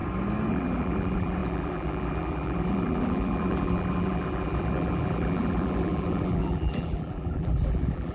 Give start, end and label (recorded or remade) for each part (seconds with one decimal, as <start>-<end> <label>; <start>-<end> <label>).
0.0-0.5 recorded; 0.5-8.1 remade